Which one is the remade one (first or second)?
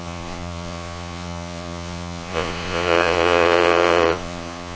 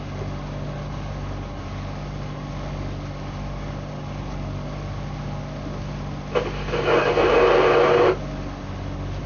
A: first